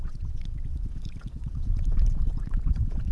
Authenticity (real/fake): fake